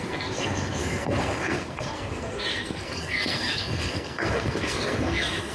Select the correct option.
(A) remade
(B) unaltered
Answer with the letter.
A